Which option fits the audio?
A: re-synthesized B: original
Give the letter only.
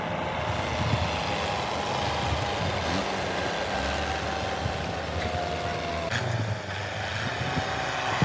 B